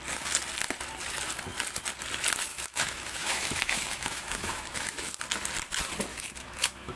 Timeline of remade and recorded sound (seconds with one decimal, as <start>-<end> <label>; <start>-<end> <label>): 0.0-2.5 recorded; 2.5-5.2 remade; 5.2-6.1 recorded; 6.1-7.0 remade